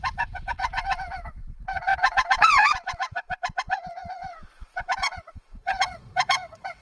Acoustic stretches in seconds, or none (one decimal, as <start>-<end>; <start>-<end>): none